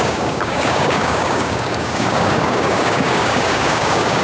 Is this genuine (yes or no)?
no